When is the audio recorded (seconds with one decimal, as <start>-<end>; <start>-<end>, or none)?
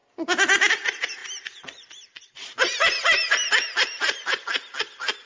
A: 0.0-1.2; 4.4-5.3